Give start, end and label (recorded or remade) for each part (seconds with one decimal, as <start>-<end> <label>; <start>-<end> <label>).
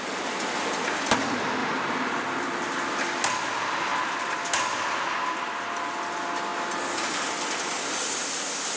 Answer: 0.0-1.6 recorded; 1.6-2.6 remade; 2.6-8.8 recorded